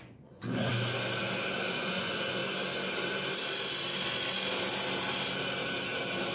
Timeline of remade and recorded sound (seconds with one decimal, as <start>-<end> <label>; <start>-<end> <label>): 0.0-0.7 remade; 0.7-1.7 recorded; 1.7-2.4 remade; 2.4-6.3 recorded